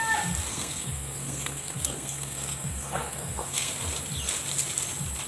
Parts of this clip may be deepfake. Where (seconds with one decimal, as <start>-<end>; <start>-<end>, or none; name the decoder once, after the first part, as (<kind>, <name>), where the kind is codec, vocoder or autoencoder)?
0.5-3.7 (codec, SNAC)